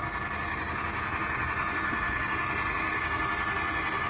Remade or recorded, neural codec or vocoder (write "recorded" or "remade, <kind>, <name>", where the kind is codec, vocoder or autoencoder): recorded